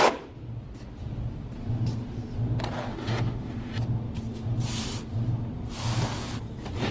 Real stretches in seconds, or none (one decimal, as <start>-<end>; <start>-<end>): 0.0-2.9; 3.7-6.9